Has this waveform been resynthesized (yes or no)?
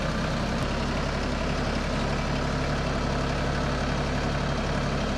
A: no